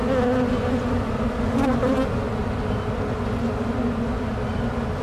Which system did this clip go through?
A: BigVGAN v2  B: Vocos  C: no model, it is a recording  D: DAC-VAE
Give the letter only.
C